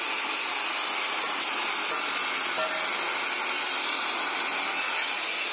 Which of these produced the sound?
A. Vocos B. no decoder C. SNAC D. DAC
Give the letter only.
B